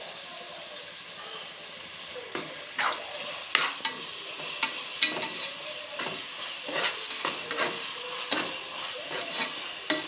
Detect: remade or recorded recorded